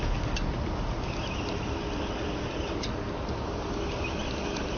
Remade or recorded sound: recorded